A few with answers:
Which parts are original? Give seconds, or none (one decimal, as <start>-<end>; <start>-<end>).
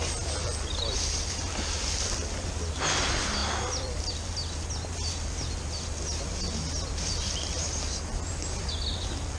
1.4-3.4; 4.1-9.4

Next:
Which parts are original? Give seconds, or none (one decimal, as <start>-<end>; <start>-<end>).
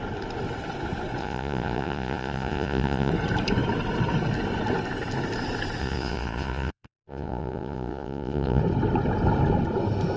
0.0-1.2; 3.1-5.8; 8.6-10.2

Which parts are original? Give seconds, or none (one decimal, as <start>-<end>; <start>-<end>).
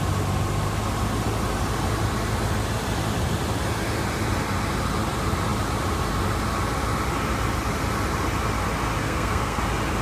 0.0-9.0; 9.6-10.0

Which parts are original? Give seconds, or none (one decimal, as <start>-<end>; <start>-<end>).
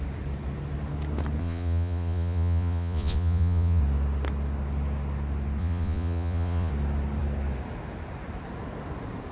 0.0-1.4; 3.8-5.6; 6.7-9.3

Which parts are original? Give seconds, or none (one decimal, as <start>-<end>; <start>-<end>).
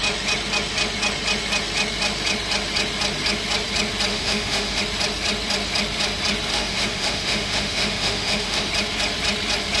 0.0-4.1; 4.8-6.5; 8.7-9.8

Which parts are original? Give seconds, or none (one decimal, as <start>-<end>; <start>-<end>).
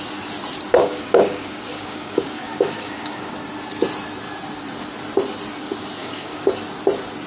0.0-0.8; 3.3-6.0; 6.5-7.3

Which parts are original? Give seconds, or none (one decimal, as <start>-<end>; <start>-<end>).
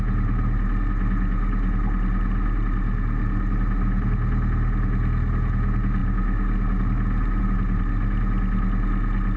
0.0-9.4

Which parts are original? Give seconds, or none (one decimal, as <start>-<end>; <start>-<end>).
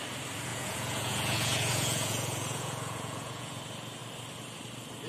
0.0-0.5; 3.6-5.1